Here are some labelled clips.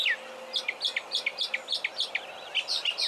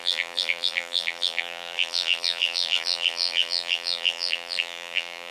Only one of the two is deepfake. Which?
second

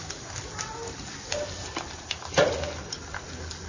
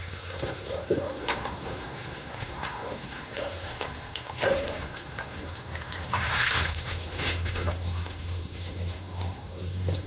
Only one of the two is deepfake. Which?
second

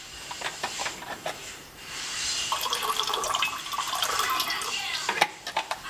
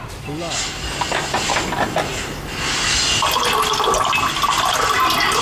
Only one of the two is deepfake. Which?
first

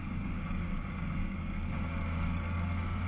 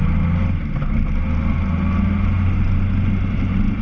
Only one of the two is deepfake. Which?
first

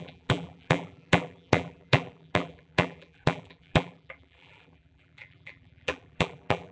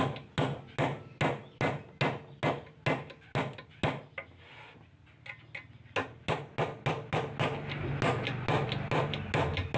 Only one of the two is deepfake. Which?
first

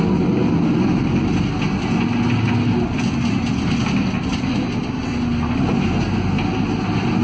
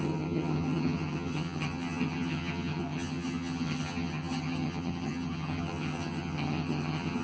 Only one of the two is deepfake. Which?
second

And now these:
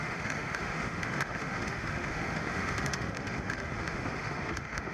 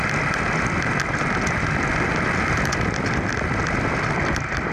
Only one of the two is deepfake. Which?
first